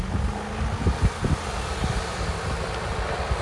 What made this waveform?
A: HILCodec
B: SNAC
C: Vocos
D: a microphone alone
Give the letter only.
D